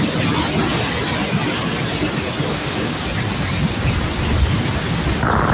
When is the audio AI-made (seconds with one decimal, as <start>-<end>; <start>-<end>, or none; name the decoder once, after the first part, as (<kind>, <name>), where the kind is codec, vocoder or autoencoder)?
2.5-3.0 (codec, DAC)